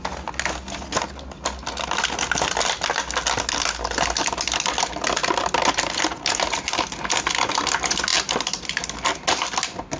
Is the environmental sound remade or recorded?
recorded